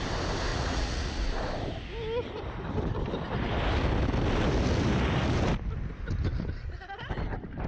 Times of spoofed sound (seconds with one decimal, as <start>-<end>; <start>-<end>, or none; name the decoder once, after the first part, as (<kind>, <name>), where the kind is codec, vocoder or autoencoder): 0.5-1.3 (vocoder, Vocos)